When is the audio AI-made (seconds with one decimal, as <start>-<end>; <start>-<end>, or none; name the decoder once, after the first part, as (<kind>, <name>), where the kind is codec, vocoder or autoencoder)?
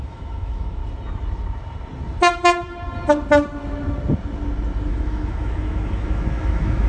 0.0-0.8 (autoencoder, DAC-VAE); 4.9-6.9